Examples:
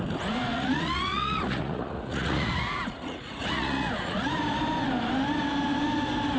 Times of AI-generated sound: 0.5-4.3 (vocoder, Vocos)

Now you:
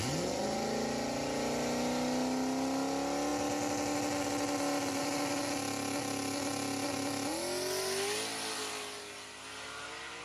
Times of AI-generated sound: none

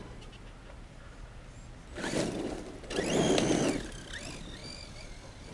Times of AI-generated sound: 4.6-5.5 (vocoder, BigVGAN v2)

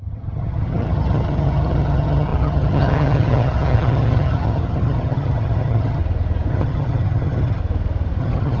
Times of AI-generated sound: 0.0-6.0 (vocoder, HiFi-GAN); 6.5-7.6; 8.2-8.6

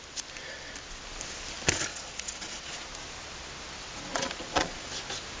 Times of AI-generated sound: 1.9-2.9 (vocoder, Vocos); 4.1-4.9

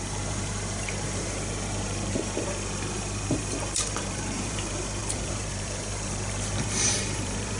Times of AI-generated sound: 0.0-7.6 (vocoder, BigVGAN v2)

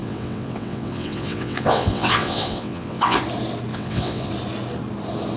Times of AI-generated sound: 0.0-3.2 (vocoder, WaveNeXt); 3.7-4.3

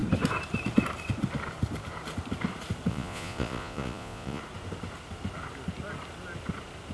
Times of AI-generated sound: 2.9-4.4 (vocoder, Vocos)